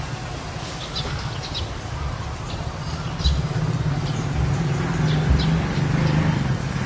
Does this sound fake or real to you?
real